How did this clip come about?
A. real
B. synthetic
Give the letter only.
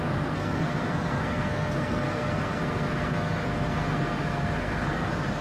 B